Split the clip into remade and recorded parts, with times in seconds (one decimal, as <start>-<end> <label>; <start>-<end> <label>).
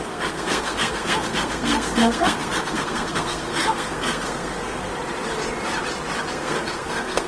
0.0-4.9 remade; 4.9-6.3 recorded; 6.3-7.3 remade